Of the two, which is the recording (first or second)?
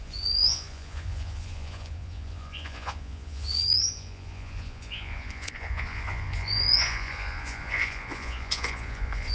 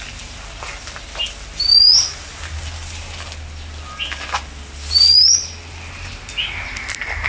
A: second